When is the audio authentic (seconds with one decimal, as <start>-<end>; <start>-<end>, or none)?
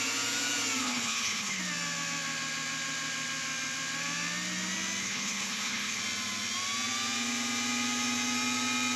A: 0.0-0.8; 1.6-5.0; 6.0-9.0